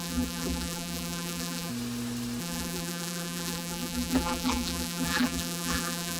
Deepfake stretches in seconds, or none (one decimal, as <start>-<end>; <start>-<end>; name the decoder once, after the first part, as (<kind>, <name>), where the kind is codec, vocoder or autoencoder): 0.0-1.7 (vocoder, BigVGAN v2); 2.4-6.2